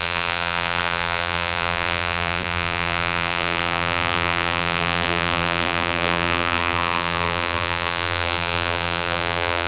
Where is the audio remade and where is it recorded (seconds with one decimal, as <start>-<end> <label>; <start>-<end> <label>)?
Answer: 0.0-9.7 remade